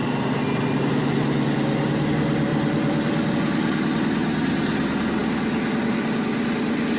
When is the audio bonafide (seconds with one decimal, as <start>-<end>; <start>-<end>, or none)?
0.0-2.5; 3.3-7.0